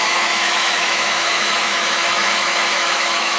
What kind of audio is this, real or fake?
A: fake